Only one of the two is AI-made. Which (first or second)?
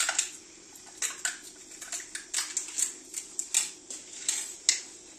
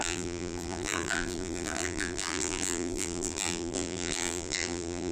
second